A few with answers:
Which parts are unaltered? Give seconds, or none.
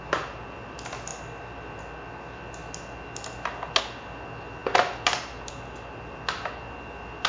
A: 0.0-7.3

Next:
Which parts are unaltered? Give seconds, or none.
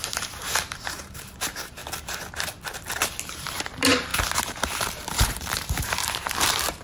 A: 1.8-3.2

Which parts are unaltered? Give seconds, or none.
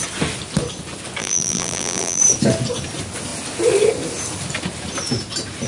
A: 0.0-1.2; 2.2-5.7